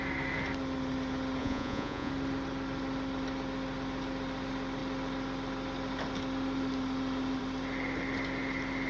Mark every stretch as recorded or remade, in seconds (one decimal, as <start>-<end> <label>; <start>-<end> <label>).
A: 0.0-1.4 recorded; 1.4-2.1 remade; 2.1-8.9 recorded